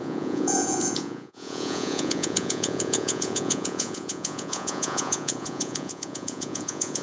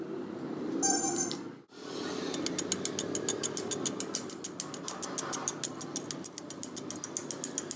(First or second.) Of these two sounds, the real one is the second